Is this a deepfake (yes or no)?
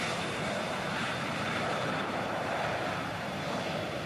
yes